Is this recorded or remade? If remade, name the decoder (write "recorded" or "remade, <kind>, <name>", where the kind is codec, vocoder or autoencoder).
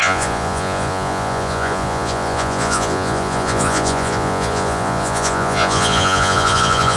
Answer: remade, vocoder, Vocos